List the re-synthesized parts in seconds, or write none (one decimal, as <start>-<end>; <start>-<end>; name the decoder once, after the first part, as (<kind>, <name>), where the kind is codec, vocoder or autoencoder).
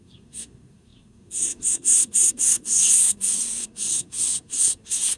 0.0-5.2 (codec, SNAC)